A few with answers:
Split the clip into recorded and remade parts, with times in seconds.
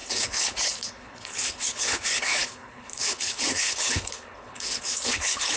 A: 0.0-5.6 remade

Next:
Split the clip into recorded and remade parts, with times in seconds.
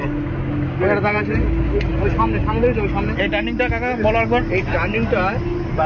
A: 0.0-5.9 recorded